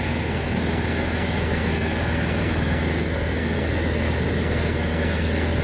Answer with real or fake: fake